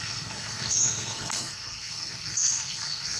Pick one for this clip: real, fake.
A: fake